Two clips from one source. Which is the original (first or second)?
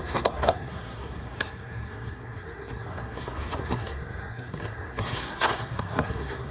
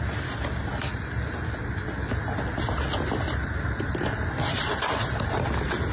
second